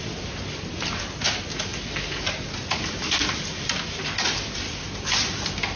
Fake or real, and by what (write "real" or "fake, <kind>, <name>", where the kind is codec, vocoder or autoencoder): real